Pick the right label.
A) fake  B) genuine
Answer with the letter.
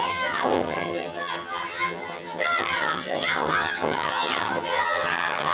A